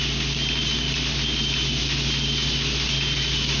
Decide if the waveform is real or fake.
real